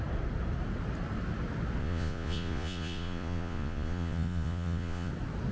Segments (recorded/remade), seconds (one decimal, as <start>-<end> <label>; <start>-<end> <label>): 0.0-1.8 recorded; 1.8-5.1 remade; 5.1-5.5 recorded